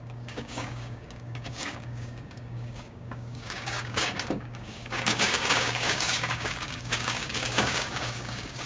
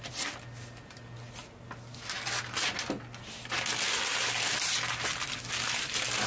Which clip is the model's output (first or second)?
first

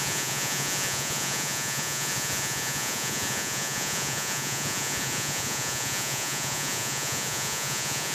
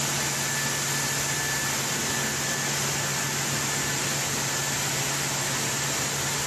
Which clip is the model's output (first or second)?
first